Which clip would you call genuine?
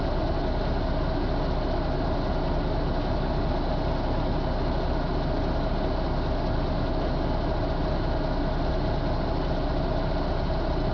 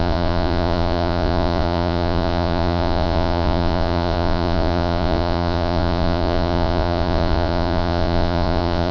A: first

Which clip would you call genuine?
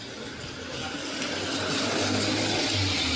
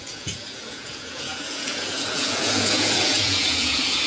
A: first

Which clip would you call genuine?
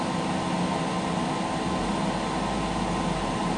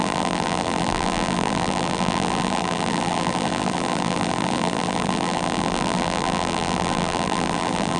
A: first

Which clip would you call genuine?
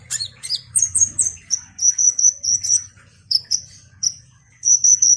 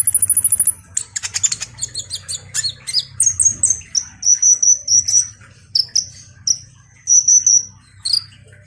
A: second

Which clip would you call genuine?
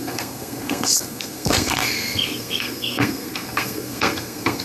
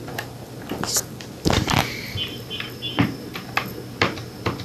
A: second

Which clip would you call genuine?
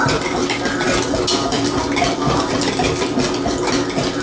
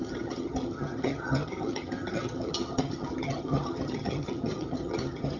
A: first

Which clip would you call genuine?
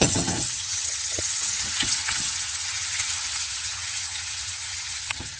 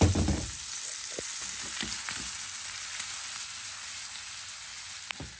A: second